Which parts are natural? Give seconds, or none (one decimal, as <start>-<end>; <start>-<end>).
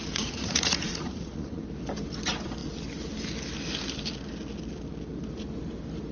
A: 1.6-6.1